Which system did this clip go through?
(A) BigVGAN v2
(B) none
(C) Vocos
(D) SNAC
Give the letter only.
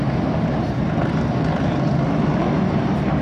B